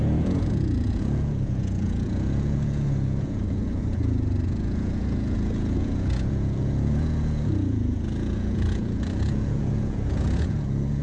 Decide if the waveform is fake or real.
fake